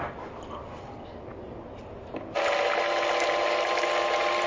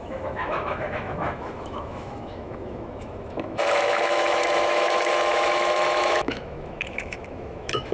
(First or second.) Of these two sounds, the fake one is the second